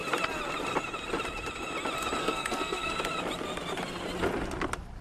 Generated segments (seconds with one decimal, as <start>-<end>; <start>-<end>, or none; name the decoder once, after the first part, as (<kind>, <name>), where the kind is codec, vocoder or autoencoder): 2.2-2.9 (codec, SNAC)